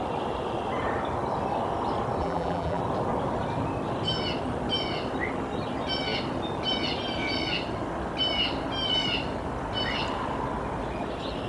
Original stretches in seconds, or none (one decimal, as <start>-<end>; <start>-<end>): 0.0-2.2; 2.8-11.5